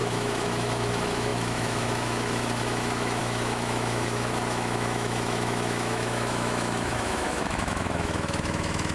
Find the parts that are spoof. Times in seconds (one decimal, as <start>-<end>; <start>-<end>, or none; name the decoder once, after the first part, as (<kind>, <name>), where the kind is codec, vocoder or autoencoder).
0.0-8.9 (autoencoder, DAC-VAE)